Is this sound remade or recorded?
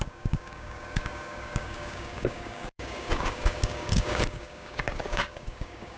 remade